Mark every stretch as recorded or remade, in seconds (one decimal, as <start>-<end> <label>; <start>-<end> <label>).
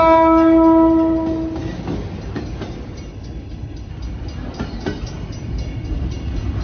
0.0-3.1 recorded; 3.1-3.9 remade; 3.9-6.6 recorded